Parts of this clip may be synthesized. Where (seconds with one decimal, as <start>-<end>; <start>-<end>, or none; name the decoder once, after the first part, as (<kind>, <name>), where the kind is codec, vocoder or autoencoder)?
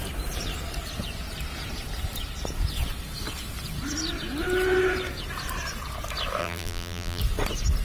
6.4-7.2 (vocoder, BigVGAN v2)